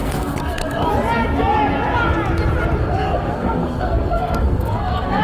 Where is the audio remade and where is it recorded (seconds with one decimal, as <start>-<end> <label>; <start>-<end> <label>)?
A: 0.0-0.9 remade; 0.9-2.8 recorded; 2.8-5.2 remade